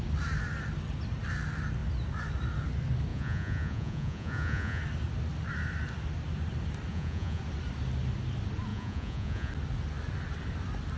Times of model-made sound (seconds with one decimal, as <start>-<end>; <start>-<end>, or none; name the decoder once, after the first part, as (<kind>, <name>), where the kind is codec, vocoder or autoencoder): 3.1-4.8 (vocoder, Vocos); 6.9-7.4; 8.7-9.5